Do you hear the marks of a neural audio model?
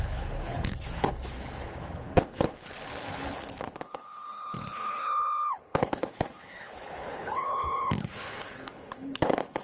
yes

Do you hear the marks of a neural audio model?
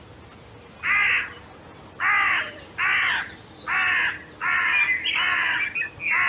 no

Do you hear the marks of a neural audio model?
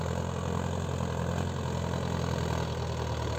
no